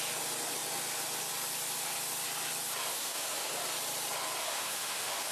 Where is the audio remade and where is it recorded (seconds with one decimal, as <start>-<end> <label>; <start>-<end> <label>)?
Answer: 0.0-2.9 recorded; 2.9-3.5 remade; 3.5-4.4 recorded; 4.4-5.3 remade